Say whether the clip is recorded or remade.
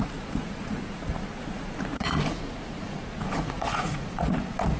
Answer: remade